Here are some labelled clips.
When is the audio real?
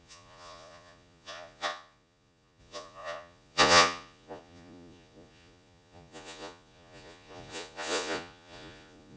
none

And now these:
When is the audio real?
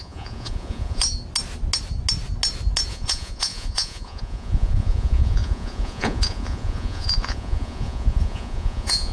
1.0-2.9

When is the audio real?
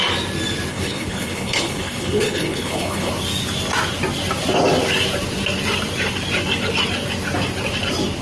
0.0-0.7; 3.1-8.2